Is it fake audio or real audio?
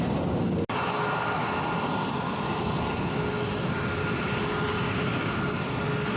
real